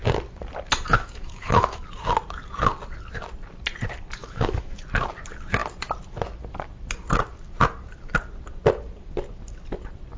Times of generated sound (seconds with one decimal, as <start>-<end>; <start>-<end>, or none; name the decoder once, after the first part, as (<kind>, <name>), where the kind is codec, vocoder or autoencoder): 0.9-1.8 (autoencoder, DAC-VAE); 4.2-4.8